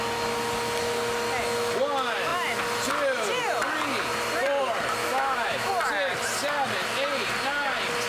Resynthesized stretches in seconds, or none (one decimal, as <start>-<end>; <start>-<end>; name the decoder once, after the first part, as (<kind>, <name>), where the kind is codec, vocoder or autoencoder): 5.0-5.7 (autoencoder, DAC-VAE)